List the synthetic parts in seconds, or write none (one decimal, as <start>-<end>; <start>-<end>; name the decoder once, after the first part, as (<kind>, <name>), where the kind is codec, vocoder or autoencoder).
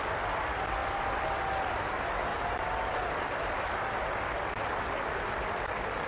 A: none